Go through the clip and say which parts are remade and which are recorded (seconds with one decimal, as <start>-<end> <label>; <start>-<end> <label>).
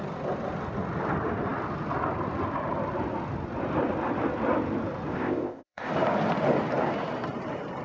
0.0-5.1 recorded; 5.1-5.9 remade; 5.9-7.8 recorded